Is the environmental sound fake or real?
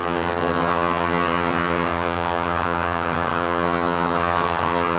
fake